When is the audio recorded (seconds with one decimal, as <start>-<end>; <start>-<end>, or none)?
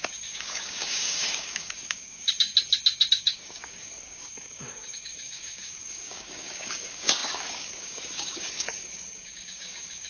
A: 2.5-3.1